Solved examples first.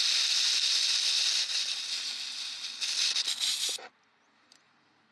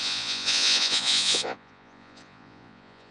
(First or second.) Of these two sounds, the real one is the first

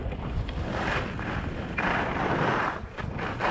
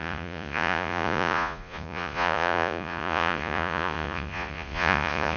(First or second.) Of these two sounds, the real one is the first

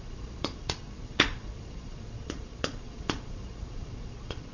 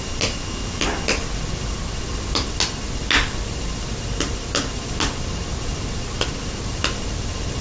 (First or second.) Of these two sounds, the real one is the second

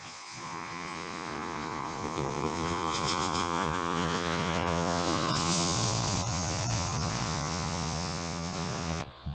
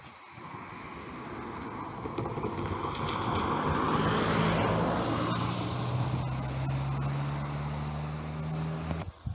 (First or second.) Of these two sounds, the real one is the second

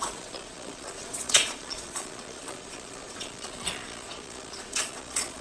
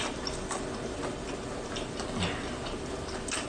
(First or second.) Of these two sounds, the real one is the second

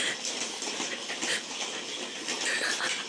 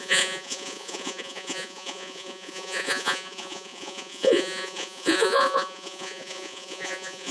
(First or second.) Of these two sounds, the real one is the first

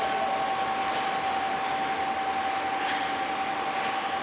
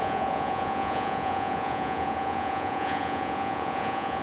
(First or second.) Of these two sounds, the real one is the first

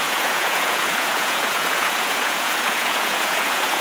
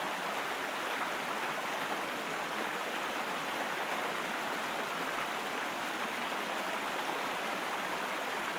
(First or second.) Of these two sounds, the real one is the second